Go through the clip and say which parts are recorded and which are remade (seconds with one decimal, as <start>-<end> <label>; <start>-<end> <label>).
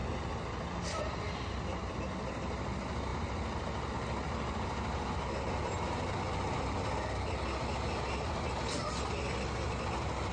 0.0-10.3 recorded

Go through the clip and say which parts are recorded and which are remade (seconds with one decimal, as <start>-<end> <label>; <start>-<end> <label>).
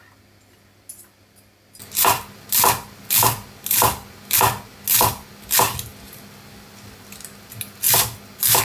0.0-8.6 recorded